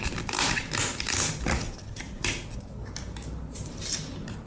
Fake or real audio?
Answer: real